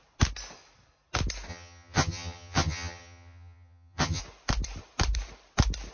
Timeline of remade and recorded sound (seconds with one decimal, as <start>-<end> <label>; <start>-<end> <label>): 0.0-1.5 recorded; 1.5-4.2 remade; 4.2-5.9 recorded